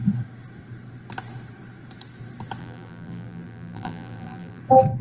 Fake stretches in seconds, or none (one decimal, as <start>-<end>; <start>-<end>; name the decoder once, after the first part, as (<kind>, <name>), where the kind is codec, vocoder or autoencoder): 2.6-4.6 (vocoder, BigVGAN v2)